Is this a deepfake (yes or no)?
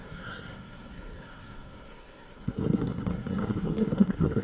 yes